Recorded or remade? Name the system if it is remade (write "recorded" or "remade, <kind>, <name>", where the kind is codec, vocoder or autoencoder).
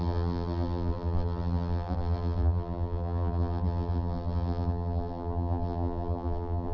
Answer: remade, vocoder, BigVGAN v2